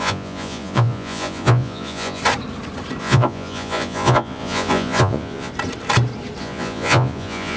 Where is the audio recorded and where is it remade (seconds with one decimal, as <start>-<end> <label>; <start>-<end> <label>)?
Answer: 0.0-2.2 remade; 2.2-3.0 recorded; 3.0-5.5 remade; 5.5-6.4 recorded; 6.4-7.6 remade